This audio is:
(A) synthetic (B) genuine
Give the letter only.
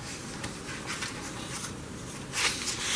B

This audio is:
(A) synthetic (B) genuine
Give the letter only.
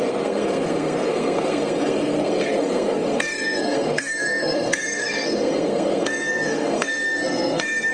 A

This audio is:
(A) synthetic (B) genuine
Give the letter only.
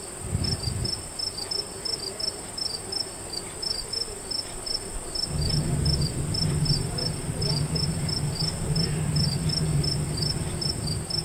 B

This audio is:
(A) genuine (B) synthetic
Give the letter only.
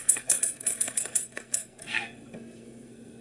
B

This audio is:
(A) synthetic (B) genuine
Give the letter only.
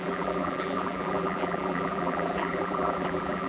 A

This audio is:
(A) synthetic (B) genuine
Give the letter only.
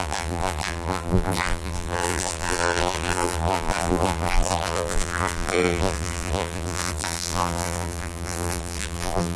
A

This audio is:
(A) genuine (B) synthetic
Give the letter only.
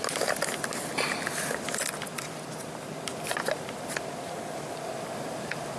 A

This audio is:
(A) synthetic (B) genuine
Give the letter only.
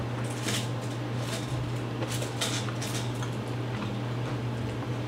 B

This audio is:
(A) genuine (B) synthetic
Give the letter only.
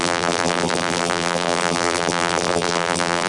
B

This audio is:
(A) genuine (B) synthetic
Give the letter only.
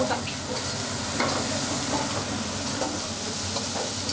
A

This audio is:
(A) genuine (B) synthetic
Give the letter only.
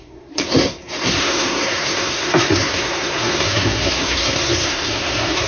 B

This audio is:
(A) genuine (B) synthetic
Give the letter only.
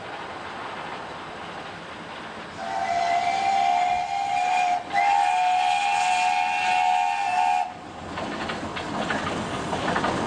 A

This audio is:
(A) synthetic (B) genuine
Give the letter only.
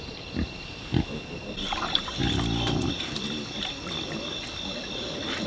B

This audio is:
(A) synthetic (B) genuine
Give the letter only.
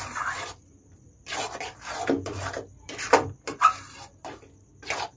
A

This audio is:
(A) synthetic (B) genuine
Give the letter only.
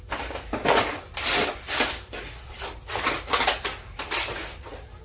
A